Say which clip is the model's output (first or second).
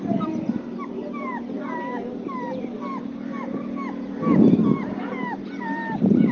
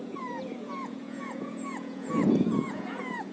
second